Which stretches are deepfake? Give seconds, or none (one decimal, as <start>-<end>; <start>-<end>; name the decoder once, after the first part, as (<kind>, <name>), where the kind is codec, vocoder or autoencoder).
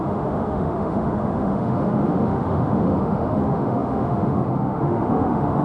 0.0-5.6 (autoencoder, DAC-VAE)